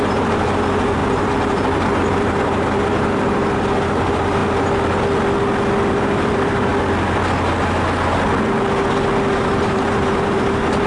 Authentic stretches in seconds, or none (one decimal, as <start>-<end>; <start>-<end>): 4.4-5.9; 6.7-9.3